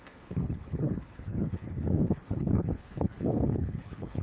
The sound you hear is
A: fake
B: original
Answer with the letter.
A